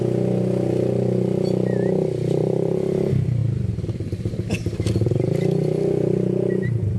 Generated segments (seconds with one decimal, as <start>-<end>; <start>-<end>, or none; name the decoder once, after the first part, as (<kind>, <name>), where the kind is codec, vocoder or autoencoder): none